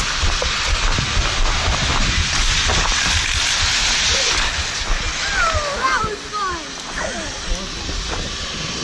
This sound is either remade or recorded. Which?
recorded